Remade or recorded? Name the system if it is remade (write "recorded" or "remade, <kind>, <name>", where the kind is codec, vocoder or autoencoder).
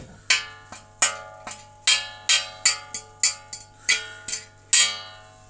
recorded